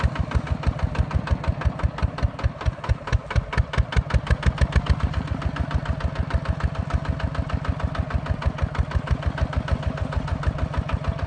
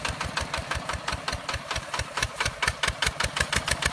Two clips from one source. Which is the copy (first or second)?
second